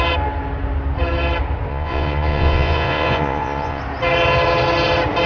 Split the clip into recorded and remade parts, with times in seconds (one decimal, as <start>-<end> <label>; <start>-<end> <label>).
0.0-1.7 recorded; 1.7-3.8 remade; 3.8-5.3 recorded